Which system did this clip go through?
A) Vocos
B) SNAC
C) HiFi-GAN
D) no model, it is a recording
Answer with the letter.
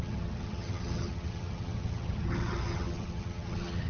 C